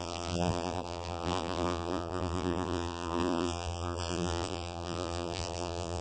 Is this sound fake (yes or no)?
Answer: yes